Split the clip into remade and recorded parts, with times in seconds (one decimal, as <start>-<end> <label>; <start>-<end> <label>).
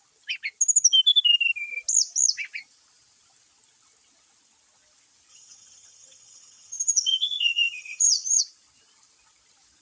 0.0-5.3 recorded; 5.3-8.4 remade; 8.4-9.8 recorded